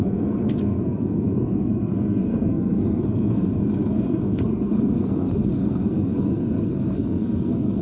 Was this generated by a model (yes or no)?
yes